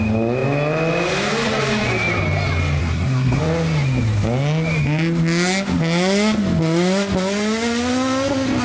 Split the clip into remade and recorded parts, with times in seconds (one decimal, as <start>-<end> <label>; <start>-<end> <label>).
0.0-2.8 recorded; 2.8-3.4 remade; 3.4-8.6 recorded